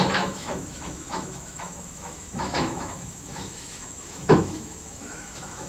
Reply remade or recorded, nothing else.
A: remade